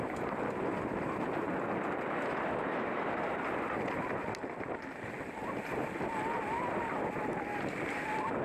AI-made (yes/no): no